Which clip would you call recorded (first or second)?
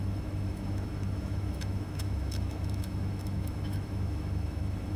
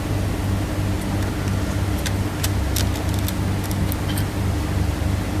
second